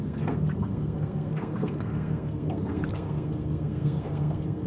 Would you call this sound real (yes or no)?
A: no